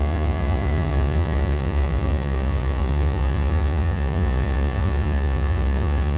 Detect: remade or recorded remade